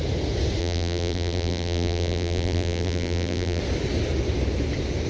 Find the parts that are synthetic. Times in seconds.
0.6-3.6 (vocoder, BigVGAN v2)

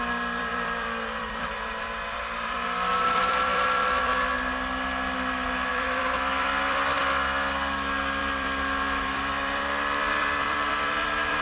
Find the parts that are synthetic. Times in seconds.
0.0-4.1 (vocoder, BigVGAN v2); 5.7-7.0; 8.2-11.4

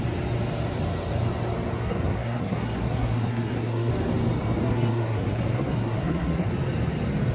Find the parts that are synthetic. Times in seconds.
1.8-3.9 (codec, SNAC); 4.6-6.5

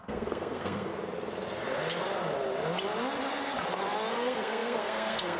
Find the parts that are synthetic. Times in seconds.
0.0-0.9 (codec, SNAC); 4.1-5.4

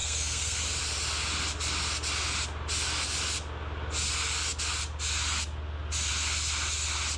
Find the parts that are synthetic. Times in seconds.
0.0-0.6 (codec, SNAC)

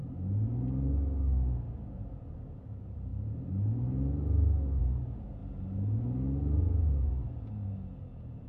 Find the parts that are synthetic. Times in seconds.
1.7-3.1 (vocoder, Vocos); 4.8-5.4; 6.6-8.5